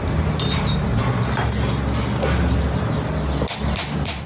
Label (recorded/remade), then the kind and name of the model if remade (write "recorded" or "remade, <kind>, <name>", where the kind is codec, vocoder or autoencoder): recorded